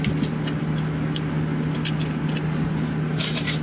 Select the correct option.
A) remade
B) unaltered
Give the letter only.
B